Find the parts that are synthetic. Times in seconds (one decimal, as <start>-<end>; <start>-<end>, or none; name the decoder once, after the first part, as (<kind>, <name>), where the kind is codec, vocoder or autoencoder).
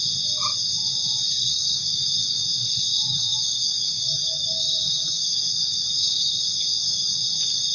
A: 1.5-2.5 (codec, DAC); 3.0-7.1